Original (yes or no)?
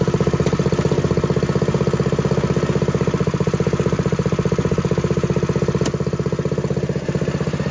yes